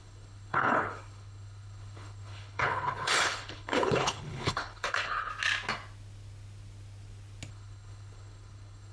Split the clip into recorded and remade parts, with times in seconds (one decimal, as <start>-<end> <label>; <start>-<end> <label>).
0.0-5.3 remade; 5.3-7.5 recorded; 7.5-8.9 remade